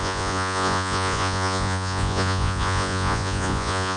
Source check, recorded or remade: remade